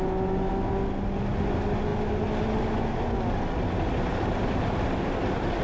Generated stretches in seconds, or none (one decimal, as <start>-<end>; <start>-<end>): 4.1-5.6